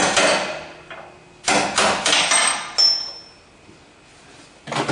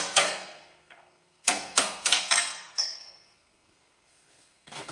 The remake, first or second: second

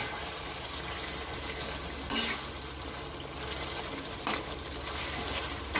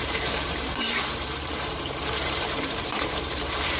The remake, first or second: second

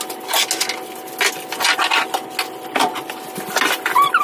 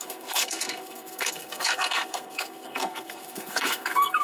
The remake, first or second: second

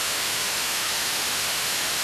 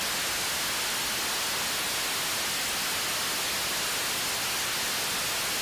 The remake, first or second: first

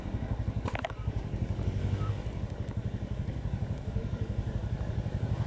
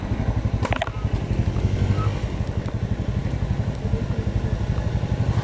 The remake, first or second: first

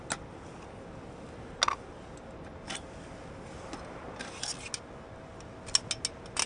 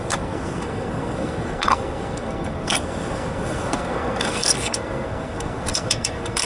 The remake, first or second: second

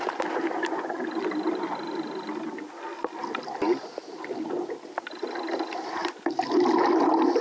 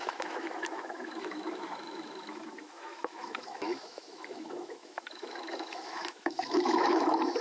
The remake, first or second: second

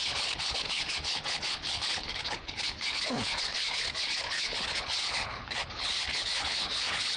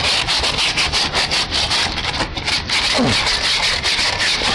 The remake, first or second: first